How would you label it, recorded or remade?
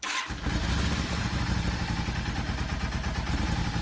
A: recorded